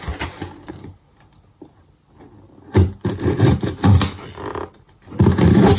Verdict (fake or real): real